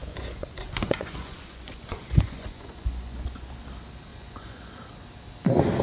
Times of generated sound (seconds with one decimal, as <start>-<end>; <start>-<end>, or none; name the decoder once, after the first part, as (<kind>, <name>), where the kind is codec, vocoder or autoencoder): 0.0-3.5 (vocoder, Vocos); 4.1-4.7